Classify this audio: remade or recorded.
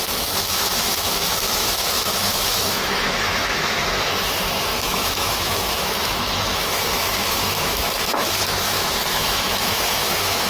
remade